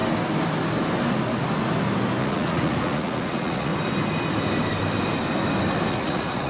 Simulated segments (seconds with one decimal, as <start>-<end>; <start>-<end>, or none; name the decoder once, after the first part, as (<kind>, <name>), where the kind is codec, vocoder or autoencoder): 2.2-3.7 (vocoder, Vocos); 5.9-6.5

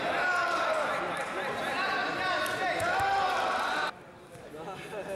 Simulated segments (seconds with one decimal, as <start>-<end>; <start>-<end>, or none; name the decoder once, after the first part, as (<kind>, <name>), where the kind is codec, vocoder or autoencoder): none

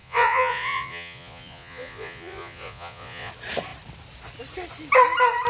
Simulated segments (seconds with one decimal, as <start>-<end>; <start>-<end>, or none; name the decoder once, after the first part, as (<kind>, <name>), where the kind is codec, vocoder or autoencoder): 0.0-3.3 (vocoder, Vocos)

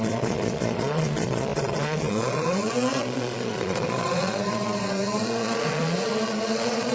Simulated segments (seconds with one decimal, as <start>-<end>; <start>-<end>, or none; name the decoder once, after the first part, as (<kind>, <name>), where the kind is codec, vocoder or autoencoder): 0.0-6.9 (vocoder, Vocos)

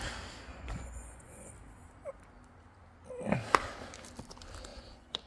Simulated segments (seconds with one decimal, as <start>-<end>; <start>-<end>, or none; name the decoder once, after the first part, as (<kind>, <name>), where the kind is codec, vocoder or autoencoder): 0.5-1.5 (vocoder, Vocos); 4.7-5.3